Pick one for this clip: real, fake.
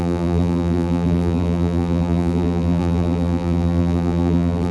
fake